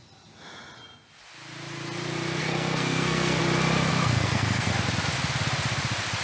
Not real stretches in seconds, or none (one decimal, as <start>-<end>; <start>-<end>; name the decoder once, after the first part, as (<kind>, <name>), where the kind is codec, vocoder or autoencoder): 2.4-3.4 (codec, SNAC); 3.9-4.7